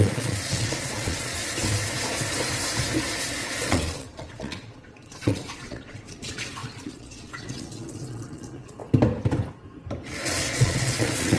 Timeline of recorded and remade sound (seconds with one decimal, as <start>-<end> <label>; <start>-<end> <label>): 0.0-1.4 remade; 1.4-3.2 recorded; 3.2-8.8 remade; 8.8-10.1 recorded; 10.1-11.4 remade